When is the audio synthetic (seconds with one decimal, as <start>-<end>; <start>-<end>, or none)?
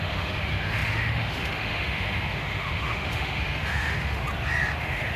0.0-4.2; 4.8-5.2